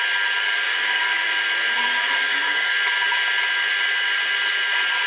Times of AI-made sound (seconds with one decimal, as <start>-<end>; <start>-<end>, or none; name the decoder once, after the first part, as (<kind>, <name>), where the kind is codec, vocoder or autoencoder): 0.4-1.4 (codec, DAC); 1.8-2.7